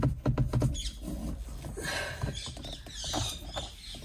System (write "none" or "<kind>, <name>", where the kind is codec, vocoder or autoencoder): none